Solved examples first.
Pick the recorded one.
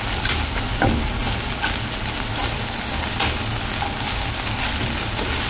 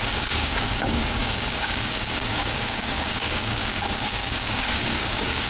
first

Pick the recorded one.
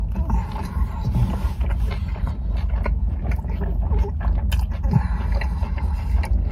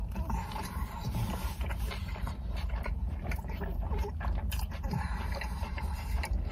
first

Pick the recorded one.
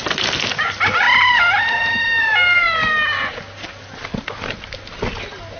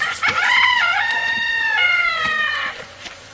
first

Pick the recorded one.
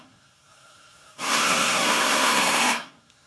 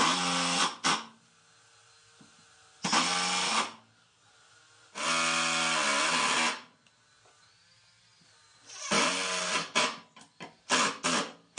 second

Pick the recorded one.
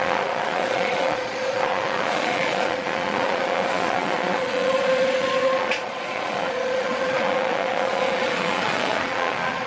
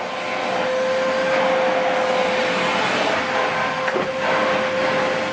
second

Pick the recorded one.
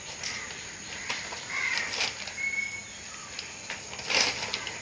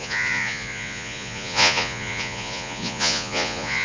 first